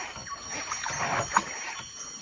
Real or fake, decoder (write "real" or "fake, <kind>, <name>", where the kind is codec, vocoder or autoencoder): real